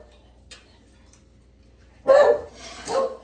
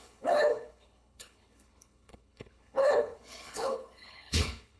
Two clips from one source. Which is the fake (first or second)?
second